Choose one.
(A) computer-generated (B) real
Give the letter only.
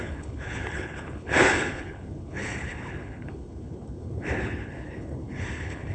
A